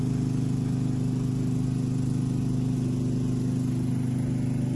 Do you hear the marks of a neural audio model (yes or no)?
no